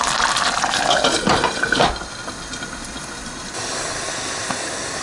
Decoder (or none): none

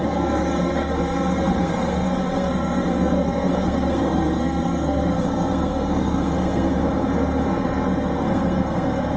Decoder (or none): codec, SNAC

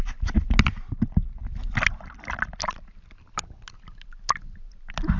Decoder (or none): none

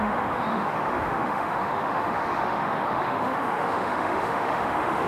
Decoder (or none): autoencoder, DAC-VAE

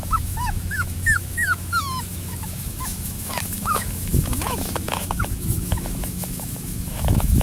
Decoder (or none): autoencoder, DAC-VAE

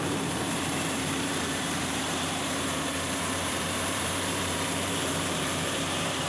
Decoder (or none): vocoder, BigVGAN v2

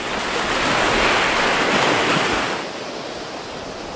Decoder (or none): none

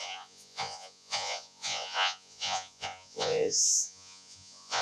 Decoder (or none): vocoder, Vocos